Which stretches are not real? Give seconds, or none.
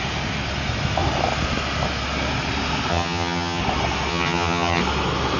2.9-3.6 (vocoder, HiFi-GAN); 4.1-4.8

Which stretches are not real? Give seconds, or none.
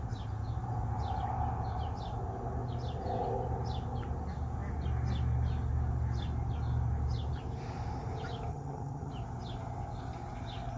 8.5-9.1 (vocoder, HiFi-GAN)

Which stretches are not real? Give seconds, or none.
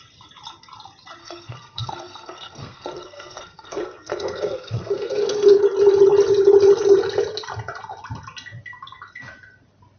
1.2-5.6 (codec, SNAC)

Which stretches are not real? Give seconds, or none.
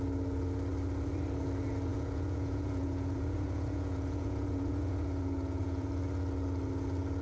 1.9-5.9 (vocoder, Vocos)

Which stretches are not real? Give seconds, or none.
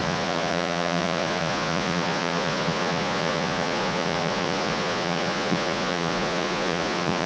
0.0-7.3 (vocoder, Vocos)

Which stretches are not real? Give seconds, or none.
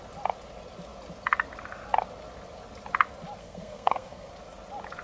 3.4-4.3 (codec, SNAC)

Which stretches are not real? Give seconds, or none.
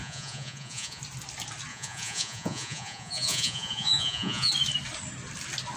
0.0-1.0 (vocoder, Vocos); 1.7-4.5